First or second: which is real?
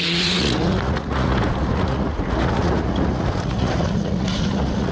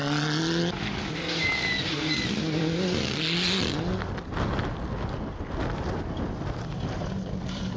second